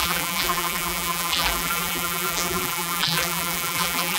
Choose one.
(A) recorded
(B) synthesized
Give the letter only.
B